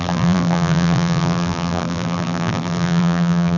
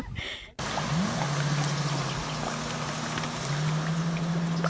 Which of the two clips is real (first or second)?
second